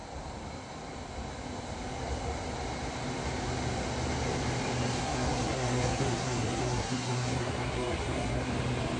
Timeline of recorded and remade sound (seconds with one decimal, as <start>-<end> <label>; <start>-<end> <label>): 0.0-5.0 recorded; 5.0-8.5 remade; 8.5-9.0 recorded